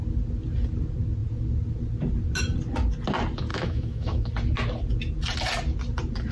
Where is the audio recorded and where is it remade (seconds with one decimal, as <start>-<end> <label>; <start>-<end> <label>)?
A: 0.0-3.5 recorded; 3.5-4.3 remade; 4.3-6.3 recorded